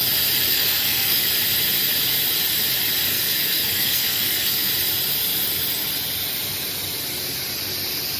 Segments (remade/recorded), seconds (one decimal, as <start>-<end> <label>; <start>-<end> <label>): 0.0-0.5 recorded; 0.5-1.2 remade; 1.2-3.1 recorded; 3.1-4.7 remade; 4.7-8.2 recorded